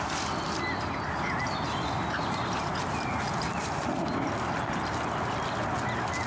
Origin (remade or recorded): recorded